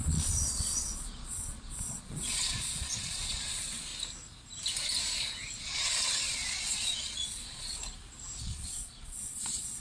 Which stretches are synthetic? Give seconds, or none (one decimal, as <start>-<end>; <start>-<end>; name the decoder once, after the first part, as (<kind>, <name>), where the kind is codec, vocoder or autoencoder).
0.0-3.9 (vocoder, Vocos); 5.6-7.8; 8.4-9.8